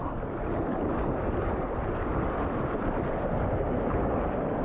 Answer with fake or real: real